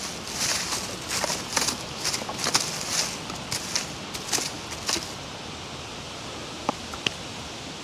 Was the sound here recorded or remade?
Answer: recorded